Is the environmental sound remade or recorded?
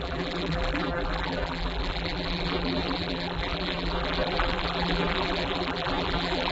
remade